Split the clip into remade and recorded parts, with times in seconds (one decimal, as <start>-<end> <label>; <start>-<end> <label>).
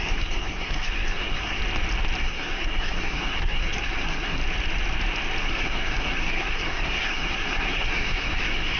0.0-1.6 remade; 1.6-2.2 recorded; 2.2-4.4 remade; 4.4-5.4 recorded; 5.4-8.8 remade